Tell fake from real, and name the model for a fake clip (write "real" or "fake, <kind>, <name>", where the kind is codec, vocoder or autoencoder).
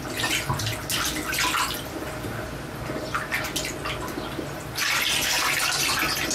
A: real